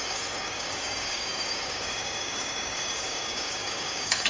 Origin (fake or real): fake